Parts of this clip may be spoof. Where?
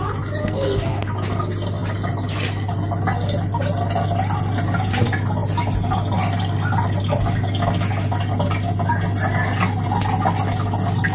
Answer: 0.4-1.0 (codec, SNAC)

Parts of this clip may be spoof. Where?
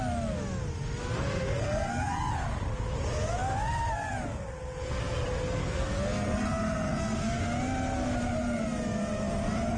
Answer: 1.5-2.2 (codec, SNAC); 5.6-7.4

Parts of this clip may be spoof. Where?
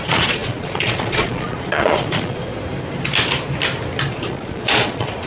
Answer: 0.0-2.4 (vocoder, Vocos); 4.1-5.3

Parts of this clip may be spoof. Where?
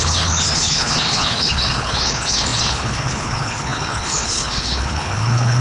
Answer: 0.0-5.6 (codec, HILCodec)